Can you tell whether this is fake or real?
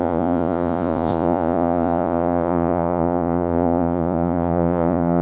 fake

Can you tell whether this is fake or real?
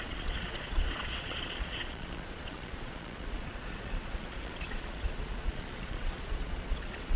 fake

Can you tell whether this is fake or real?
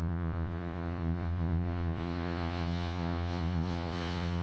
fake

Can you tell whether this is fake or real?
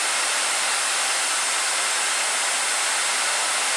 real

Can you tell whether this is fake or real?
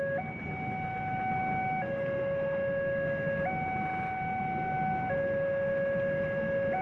real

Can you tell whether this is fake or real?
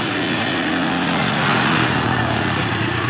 fake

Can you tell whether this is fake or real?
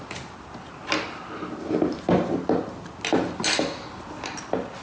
real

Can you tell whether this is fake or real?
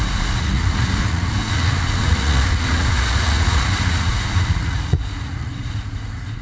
fake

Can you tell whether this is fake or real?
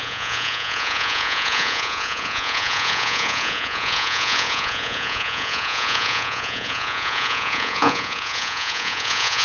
fake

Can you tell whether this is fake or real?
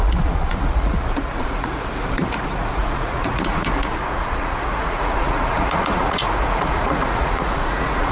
fake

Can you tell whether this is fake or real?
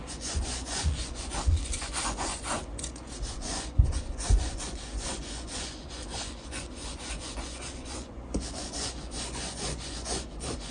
fake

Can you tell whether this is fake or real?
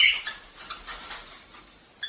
real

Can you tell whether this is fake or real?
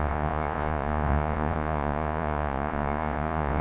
fake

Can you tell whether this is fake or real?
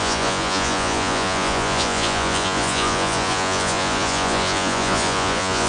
fake